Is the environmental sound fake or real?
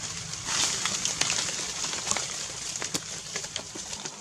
real